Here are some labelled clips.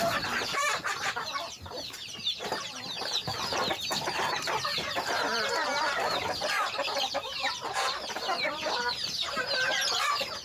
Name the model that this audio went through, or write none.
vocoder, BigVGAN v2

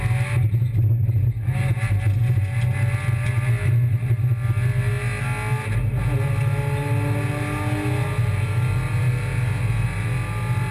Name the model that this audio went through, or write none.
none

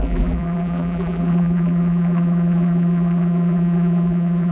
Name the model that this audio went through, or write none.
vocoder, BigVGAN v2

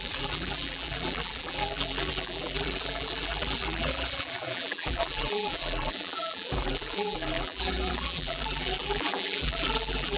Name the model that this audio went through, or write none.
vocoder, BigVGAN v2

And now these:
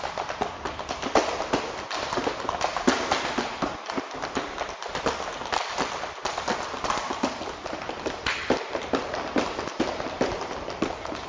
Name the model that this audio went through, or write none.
vocoder, BigVGAN v2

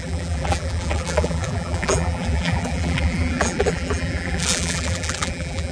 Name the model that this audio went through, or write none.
vocoder, BigVGAN v2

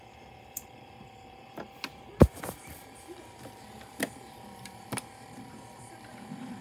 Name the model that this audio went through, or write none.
vocoder, BigVGAN v2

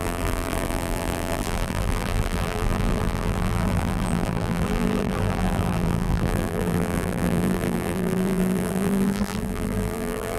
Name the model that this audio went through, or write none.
vocoder, BigVGAN v2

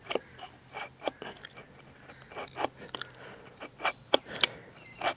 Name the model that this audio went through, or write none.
vocoder, BigVGAN v2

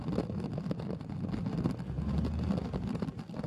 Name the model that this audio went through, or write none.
none